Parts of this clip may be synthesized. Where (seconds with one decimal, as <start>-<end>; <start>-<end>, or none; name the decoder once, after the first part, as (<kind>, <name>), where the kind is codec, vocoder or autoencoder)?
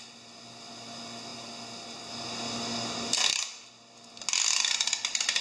none